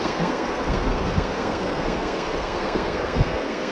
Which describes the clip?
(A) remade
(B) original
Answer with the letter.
A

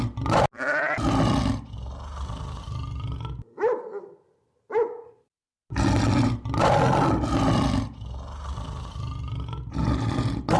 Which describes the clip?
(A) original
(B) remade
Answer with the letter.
A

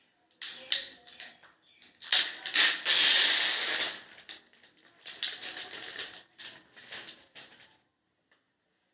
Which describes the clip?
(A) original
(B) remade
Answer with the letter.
A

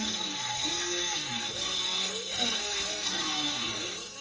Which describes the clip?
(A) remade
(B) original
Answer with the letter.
A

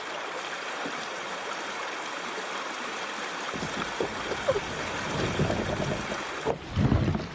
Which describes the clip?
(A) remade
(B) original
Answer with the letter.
B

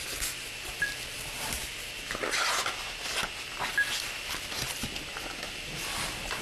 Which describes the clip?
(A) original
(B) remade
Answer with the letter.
A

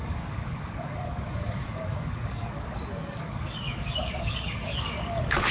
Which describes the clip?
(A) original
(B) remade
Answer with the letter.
B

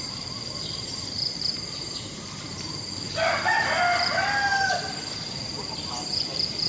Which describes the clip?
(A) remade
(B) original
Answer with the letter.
A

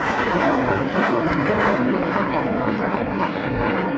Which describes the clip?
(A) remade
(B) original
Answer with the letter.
A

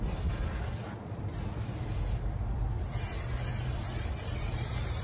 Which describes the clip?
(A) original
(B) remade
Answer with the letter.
B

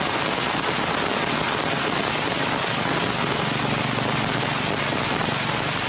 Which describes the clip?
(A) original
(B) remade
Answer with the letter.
A